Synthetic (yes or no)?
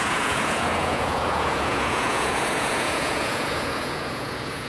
yes